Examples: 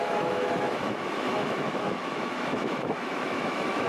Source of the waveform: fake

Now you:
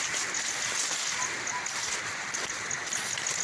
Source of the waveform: real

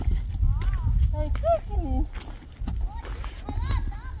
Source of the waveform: real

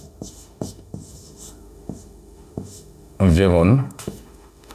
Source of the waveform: fake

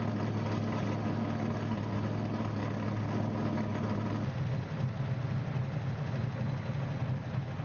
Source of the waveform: real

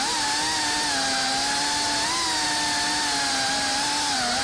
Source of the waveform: real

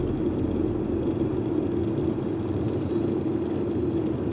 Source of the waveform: real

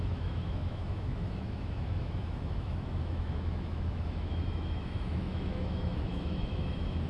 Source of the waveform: fake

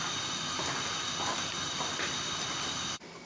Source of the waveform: real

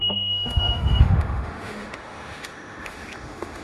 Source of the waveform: fake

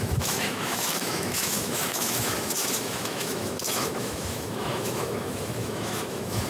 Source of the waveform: fake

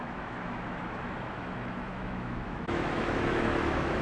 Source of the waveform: fake